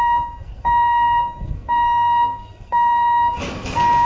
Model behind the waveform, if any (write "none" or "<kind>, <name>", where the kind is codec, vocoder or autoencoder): codec, SNAC